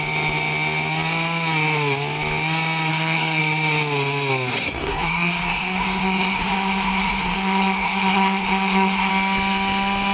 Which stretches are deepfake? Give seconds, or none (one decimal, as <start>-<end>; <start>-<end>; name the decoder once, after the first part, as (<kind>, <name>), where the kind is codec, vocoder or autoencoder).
2.9-3.4 (codec, SNAC); 4.5-9.1